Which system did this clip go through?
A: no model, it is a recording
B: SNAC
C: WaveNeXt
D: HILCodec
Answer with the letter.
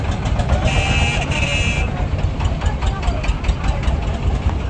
A